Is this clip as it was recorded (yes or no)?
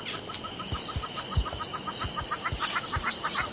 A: yes